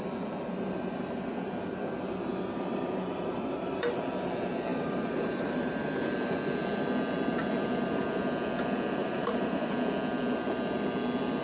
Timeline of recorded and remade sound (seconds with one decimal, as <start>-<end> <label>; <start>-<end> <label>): 0.0-2.3 recorded; 2.3-4.0 remade; 4.0-4.7 recorded; 4.7-5.9 remade; 5.9-9.0 recorded; 9.0-9.7 remade; 9.7-11.4 recorded

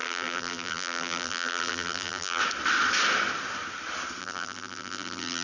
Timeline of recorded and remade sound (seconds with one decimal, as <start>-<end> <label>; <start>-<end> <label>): 0.0-2.4 remade; 2.4-4.2 recorded; 4.2-5.4 remade